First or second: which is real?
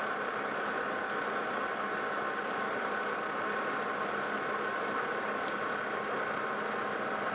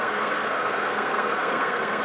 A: first